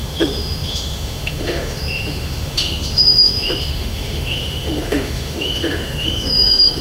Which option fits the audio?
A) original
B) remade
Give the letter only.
B